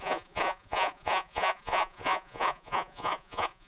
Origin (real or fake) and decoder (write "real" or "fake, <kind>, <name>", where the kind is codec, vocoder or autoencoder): fake, vocoder, Vocos